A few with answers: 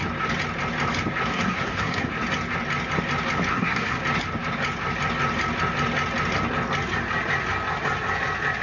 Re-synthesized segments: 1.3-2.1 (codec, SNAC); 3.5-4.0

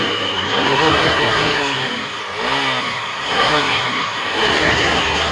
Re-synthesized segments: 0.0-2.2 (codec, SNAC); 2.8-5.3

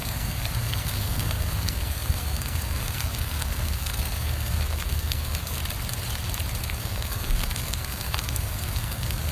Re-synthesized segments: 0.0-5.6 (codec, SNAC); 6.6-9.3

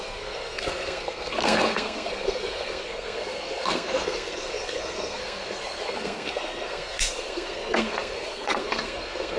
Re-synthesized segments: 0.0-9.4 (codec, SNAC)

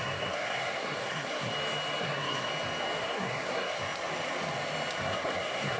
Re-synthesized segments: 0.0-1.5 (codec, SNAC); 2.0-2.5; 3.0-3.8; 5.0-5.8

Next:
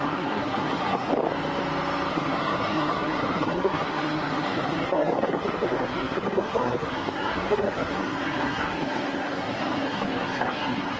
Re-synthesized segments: 0.0-1.1 (codec, SNAC); 2.1-11.0

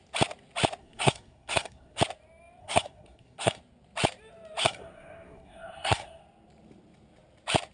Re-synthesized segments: 0.8-2.0 (codec, SNAC); 2.6-3.6; 4.6-6.2

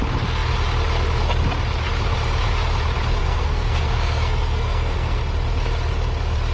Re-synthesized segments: 3.2-5.2 (codec, SNAC)